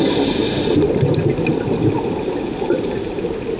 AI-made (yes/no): no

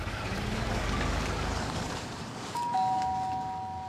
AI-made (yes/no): yes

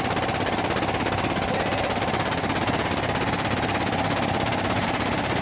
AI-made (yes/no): no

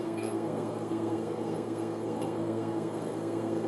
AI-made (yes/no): yes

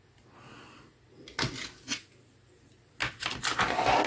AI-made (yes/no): no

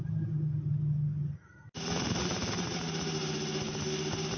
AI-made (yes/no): no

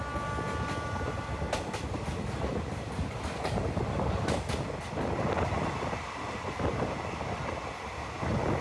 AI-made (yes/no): no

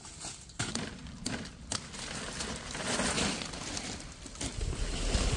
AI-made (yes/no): no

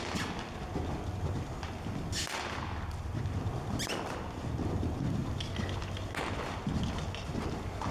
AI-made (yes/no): no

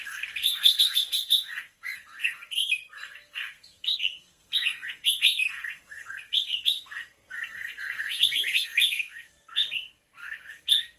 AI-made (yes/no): yes